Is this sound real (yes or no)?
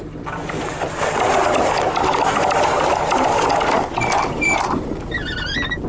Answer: yes